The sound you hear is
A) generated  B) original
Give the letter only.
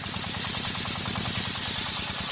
B